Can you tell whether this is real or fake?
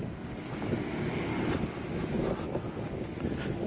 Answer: real